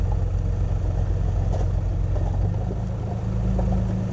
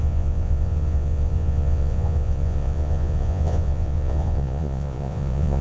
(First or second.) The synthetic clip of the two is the second